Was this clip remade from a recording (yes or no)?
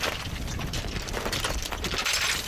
yes